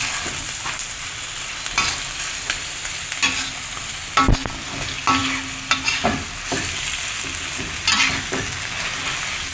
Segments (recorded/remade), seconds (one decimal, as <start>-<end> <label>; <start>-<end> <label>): 0.0-9.5 recorded